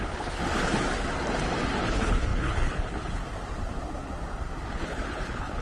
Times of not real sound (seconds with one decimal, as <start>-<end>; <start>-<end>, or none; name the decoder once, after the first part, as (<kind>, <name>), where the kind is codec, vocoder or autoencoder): 0.0-0.4 (codec, HILCodec); 1.8-3.2; 4.7-5.6

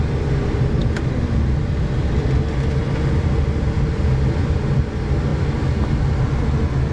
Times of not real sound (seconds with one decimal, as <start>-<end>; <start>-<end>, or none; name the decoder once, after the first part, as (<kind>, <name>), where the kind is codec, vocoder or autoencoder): none

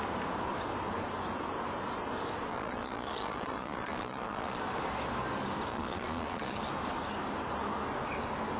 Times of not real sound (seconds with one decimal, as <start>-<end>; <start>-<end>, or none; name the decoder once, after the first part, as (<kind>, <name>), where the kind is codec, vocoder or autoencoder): 2.5-4.6 (vocoder, Vocos); 5.7-6.7

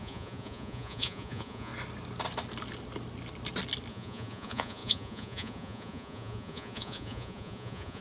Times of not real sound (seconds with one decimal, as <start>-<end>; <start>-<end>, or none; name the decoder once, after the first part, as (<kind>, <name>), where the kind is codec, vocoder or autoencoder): 0.0-1.7 (vocoder, Vocos); 3.9-8.0

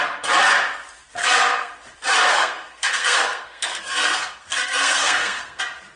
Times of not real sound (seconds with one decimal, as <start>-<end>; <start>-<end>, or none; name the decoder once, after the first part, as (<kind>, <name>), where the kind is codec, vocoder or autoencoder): 1.2-1.7 (codec, SNAC); 2.3-5.6

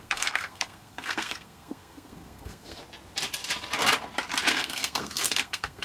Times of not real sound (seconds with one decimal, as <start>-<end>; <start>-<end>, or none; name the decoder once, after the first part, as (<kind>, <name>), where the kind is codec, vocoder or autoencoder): 0.0-2.8 (codec, SNAC); 4.5-5.8